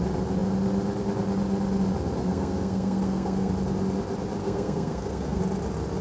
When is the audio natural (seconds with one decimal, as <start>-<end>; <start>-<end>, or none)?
0.0-2.2; 3.5-4.4; 5.4-6.0